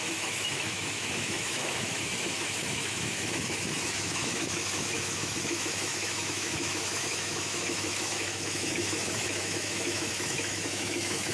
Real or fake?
fake